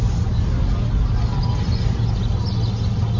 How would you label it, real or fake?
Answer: real